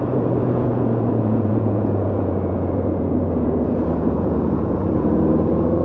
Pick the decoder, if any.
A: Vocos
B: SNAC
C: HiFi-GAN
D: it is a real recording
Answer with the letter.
A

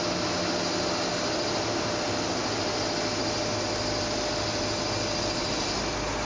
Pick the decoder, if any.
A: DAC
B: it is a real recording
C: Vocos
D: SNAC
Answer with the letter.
B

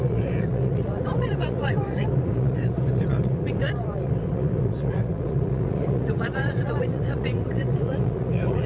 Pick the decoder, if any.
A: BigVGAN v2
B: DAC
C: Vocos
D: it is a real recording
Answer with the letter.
C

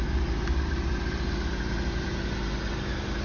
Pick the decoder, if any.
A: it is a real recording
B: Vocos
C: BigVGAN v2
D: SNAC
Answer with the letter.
A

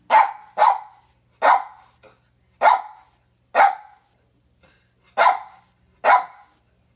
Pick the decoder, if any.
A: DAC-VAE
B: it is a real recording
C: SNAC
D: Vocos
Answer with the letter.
B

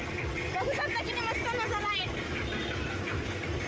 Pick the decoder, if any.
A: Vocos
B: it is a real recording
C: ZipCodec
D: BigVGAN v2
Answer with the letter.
B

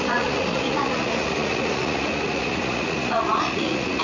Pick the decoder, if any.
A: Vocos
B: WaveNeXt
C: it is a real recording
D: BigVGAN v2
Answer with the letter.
A